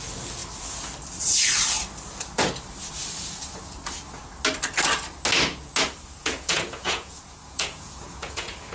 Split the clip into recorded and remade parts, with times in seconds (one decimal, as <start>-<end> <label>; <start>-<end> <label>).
0.0-6.2 recorded; 6.2-8.7 remade